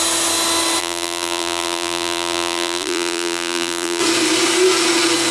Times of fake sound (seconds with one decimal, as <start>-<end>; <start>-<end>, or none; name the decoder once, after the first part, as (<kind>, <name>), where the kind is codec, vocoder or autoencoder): 0.8-4.0 (vocoder, BigVGAN v2)